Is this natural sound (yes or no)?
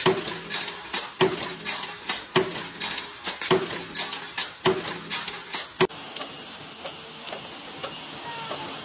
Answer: yes